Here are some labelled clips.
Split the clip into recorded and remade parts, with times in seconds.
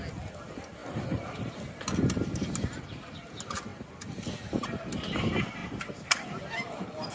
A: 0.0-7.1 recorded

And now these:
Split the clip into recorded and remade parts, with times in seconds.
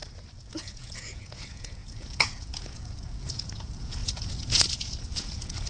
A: 0.0-0.5 recorded; 0.5-5.7 remade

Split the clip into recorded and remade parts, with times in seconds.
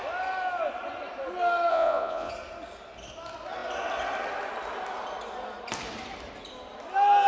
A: 0.0-1.7 recorded; 1.7-2.3 remade; 2.3-7.3 recorded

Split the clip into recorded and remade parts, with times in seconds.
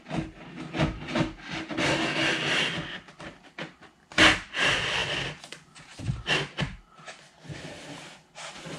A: 0.0-8.8 recorded